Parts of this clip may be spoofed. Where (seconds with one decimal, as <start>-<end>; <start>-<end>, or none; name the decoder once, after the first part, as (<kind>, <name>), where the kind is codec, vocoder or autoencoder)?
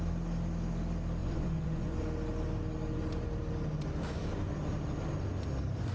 1.2-2.0 (vocoder, Vocos)